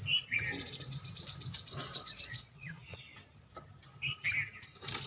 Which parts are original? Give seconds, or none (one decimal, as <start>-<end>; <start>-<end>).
0.0-1.9; 3.0-5.1